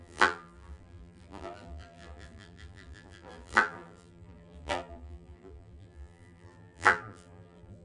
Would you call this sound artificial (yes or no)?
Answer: yes